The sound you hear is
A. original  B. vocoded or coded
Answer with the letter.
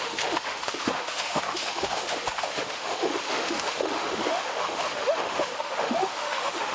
B